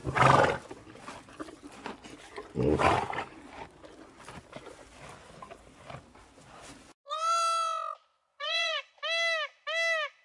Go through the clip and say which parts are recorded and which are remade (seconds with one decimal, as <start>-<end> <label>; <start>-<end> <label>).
0.0-8.3 recorded; 8.3-8.9 remade; 8.9-10.2 recorded